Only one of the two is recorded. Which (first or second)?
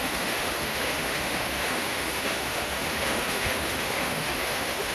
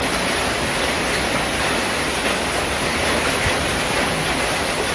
second